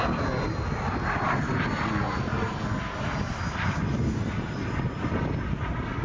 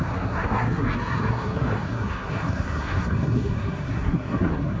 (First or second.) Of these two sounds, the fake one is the second